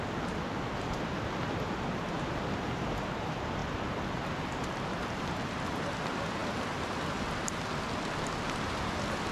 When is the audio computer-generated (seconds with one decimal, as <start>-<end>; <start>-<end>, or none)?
none